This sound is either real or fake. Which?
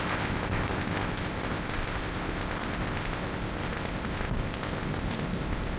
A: fake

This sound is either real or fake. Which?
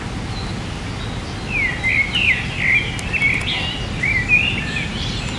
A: real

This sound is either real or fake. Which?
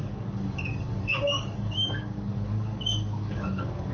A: fake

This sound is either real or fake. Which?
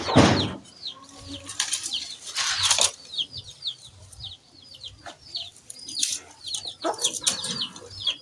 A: fake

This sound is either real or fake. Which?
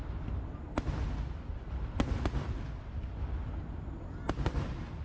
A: real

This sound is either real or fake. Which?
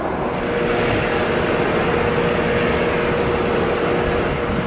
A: real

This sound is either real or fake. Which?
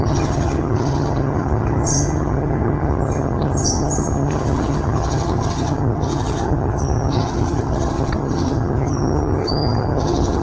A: fake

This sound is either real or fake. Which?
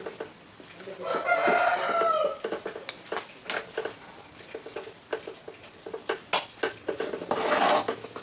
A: real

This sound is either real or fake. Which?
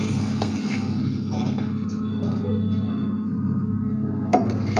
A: fake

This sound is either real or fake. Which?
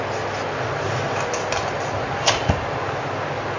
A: real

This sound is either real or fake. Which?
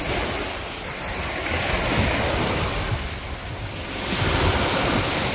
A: real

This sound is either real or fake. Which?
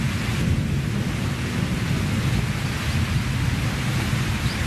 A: real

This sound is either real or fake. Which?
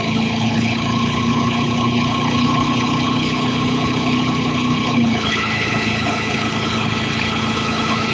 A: fake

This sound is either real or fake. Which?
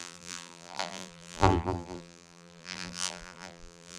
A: fake